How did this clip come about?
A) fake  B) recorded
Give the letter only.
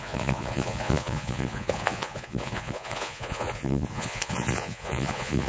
A